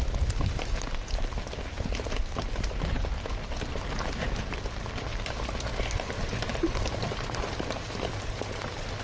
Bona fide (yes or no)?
no